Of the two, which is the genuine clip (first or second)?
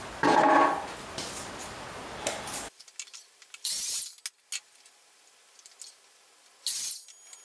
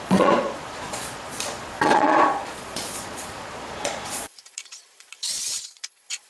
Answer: first